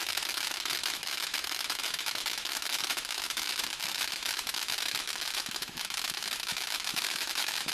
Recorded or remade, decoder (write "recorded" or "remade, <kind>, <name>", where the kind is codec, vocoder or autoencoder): remade, autoencoder, DAC-VAE